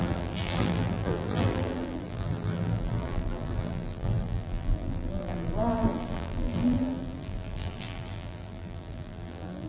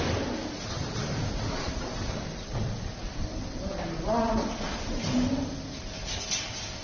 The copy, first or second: first